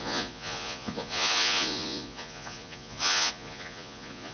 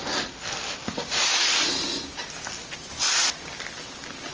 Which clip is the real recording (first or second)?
second